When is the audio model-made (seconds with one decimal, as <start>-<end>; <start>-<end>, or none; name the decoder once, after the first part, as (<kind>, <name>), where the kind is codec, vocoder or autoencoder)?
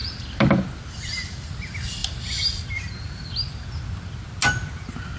none